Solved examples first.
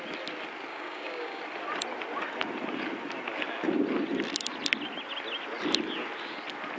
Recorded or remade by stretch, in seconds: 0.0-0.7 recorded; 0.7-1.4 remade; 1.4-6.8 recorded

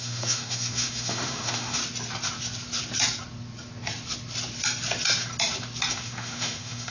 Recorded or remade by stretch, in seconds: 0.0-1.8 remade; 1.8-5.9 recorded; 5.9-6.9 remade